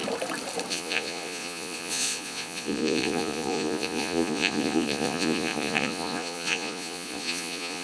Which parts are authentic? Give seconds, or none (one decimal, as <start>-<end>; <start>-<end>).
0.0-0.7

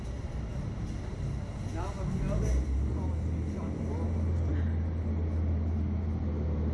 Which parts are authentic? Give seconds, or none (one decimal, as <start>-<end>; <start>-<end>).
0.0-6.7

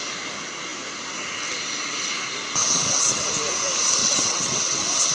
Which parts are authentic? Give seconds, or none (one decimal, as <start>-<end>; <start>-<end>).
0.0-2.6; 3.2-4.0

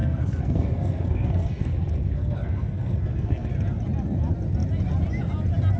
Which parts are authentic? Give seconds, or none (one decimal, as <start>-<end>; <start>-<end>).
3.5-5.8

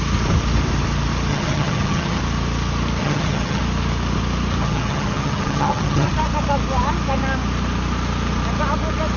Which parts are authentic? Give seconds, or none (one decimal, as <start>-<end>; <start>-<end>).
0.0-1.3; 2.2-3.0; 3.6-4.6; 6.1-9.2

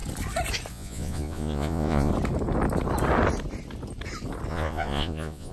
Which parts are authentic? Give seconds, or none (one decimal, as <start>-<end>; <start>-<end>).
0.0-0.7; 2.1-4.5